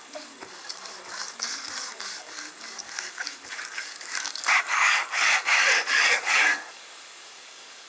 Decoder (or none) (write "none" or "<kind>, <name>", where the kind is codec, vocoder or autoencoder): codec, DAC